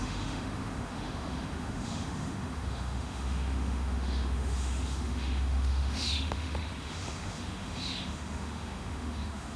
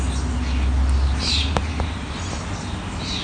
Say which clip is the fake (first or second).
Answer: first